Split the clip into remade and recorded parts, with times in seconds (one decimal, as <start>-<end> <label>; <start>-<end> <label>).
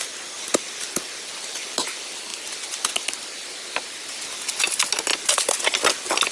0.0-6.3 recorded